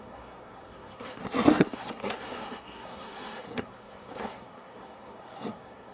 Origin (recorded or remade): remade